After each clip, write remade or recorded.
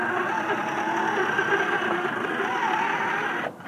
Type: recorded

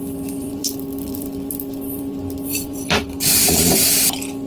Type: remade